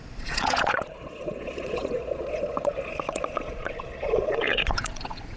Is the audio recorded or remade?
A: remade